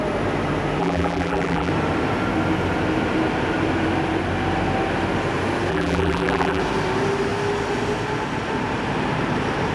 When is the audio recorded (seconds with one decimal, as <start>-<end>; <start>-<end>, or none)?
0.0-0.8; 1.7-5.7; 6.6-9.7